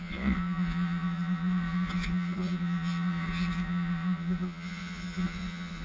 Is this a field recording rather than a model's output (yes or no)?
no